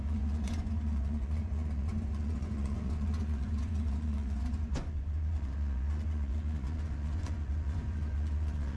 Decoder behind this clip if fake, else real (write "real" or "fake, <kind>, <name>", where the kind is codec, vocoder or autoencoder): fake, vocoder, Vocos